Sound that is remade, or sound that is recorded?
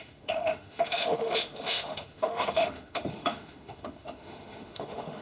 remade